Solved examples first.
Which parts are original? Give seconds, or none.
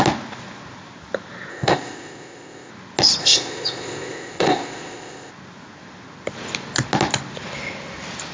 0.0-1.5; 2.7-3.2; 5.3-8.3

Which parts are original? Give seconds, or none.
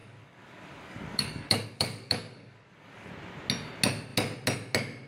3.1-5.1